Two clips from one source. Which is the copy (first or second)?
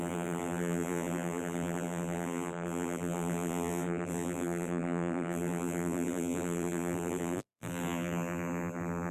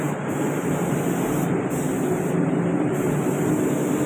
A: first